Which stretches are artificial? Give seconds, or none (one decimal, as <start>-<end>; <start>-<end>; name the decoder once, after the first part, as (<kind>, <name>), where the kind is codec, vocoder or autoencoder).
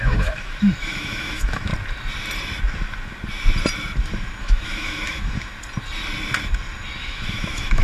0.0-1.7 (autoencoder, DAC-VAE); 4.4-5.5; 7.0-7.8